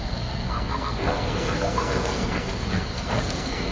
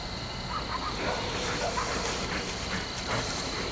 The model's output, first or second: first